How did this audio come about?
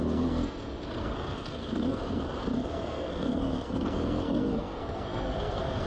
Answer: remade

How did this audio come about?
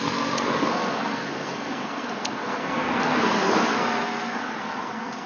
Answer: remade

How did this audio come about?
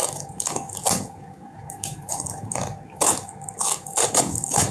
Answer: remade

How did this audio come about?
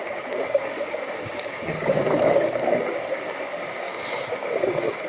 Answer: remade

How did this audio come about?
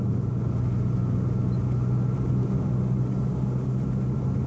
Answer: recorded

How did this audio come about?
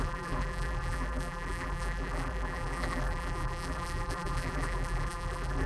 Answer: remade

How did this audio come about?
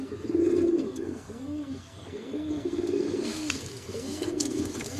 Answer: remade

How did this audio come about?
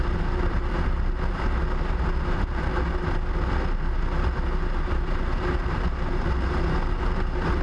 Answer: recorded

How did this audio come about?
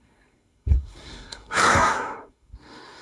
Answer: remade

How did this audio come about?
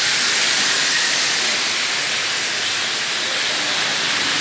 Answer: recorded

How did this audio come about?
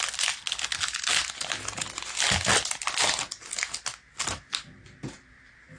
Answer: recorded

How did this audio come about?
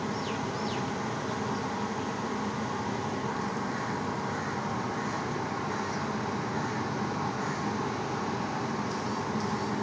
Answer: recorded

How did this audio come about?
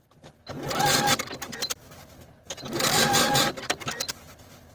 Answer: remade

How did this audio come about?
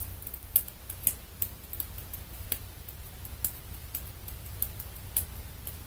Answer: recorded